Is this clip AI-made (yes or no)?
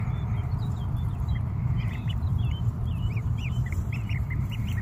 yes